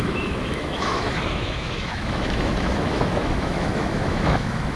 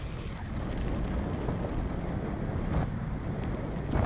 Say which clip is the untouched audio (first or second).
second